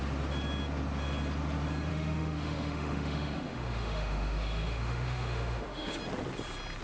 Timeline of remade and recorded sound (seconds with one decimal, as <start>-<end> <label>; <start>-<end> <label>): 0.0-1.9 recorded; 1.9-6.0 remade; 6.0-6.8 recorded